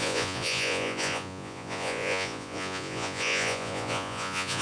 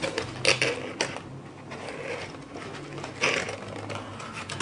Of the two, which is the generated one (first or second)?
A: first